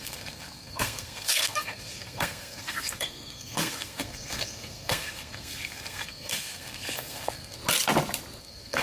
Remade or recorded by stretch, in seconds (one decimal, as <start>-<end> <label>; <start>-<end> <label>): 0.0-7.6 remade; 7.6-8.4 recorded; 8.4-8.8 remade